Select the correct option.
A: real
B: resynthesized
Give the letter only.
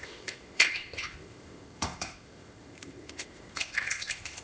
B